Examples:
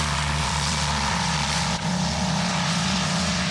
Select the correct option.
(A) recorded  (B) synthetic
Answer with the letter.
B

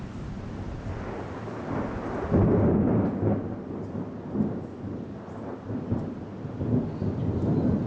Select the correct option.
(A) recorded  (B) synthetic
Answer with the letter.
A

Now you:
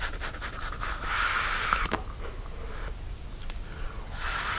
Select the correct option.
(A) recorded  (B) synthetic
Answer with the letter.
A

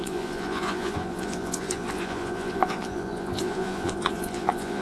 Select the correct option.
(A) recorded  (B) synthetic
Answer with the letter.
B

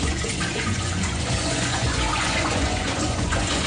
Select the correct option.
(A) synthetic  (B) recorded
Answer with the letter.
A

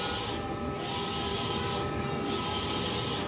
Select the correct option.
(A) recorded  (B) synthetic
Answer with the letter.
A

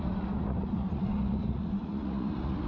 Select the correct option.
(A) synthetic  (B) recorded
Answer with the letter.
A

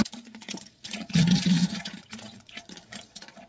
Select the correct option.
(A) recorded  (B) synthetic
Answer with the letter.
B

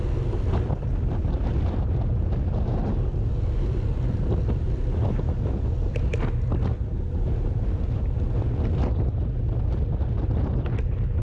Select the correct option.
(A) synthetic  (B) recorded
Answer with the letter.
B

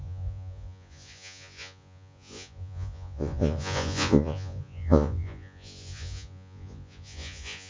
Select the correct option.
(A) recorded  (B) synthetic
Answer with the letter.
B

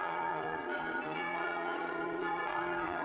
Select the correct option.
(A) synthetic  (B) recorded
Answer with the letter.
A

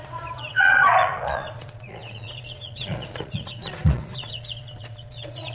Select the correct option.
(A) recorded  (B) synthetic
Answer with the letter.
B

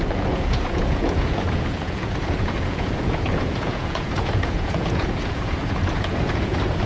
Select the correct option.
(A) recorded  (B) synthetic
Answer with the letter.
B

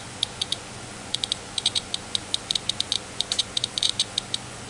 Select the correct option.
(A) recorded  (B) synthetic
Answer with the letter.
B